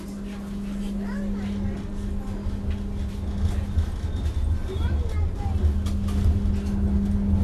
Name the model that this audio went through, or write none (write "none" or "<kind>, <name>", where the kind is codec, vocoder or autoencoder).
none